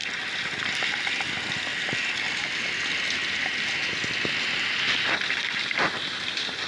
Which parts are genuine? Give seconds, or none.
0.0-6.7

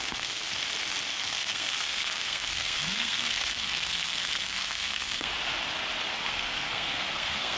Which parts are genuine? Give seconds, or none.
0.5-1.1; 5.3-6.2

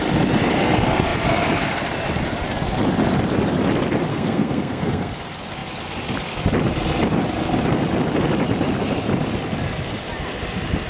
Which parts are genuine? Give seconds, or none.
0.0-4.1; 5.1-10.9

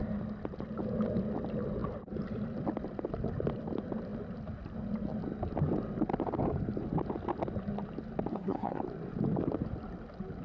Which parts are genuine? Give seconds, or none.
0.0-8.3; 8.8-10.4

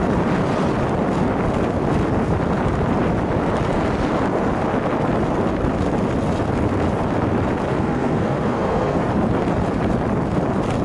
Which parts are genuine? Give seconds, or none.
0.0-7.7; 9.1-10.8

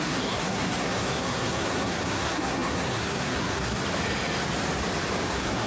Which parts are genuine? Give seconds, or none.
3.8-5.3